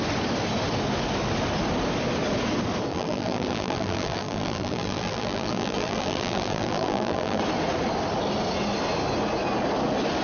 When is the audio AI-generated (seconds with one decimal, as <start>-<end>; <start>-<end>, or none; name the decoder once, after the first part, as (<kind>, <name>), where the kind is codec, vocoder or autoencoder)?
2.9-7.4 (vocoder, BigVGAN v2)